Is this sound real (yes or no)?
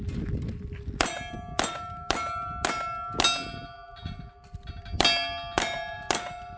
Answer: yes